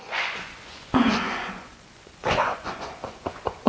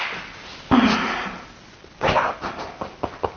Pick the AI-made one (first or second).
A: first